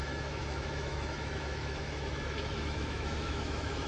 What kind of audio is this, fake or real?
fake